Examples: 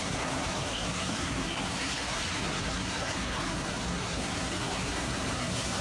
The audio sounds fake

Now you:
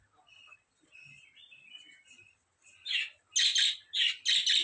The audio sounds real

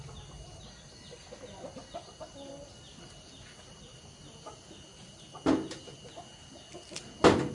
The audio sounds real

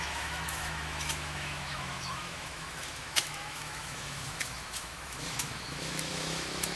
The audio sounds fake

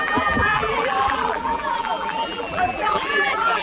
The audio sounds fake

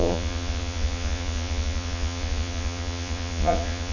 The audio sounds fake